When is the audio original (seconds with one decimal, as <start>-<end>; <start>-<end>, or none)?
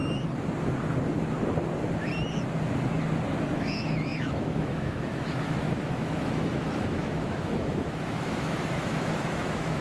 0.0-3.6